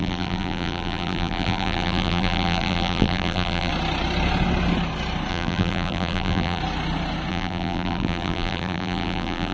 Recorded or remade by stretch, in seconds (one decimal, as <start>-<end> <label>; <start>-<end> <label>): 0.0-3.7 remade; 3.7-5.3 recorded; 5.3-6.6 remade; 6.6-7.3 recorded; 7.3-9.5 remade